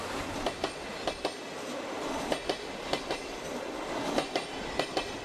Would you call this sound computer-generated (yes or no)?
no